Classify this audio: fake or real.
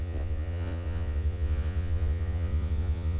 fake